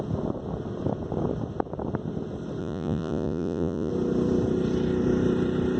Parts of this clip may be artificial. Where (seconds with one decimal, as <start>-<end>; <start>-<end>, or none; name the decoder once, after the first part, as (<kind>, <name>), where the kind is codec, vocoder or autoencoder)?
2.6-3.9 (vocoder, Vocos)